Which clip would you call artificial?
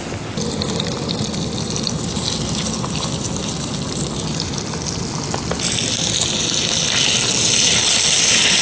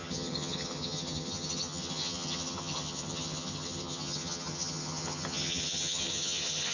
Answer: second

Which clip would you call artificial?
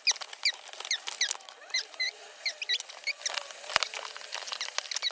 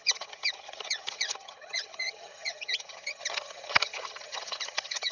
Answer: second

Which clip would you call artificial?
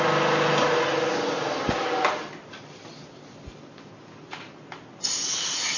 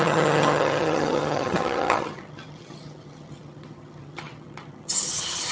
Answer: second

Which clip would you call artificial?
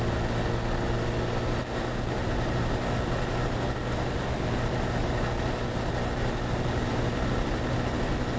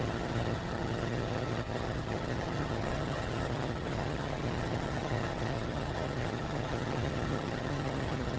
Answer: second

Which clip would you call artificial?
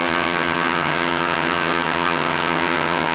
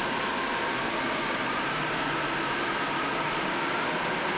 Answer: first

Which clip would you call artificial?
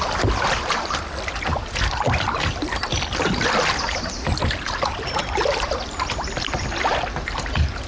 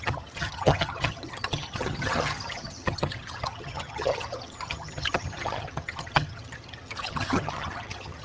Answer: second